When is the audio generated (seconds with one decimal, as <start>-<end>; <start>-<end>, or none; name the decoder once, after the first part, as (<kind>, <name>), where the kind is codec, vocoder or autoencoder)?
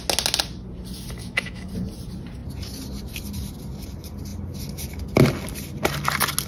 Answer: 1.2-1.7 (autoencoder, DAC-VAE)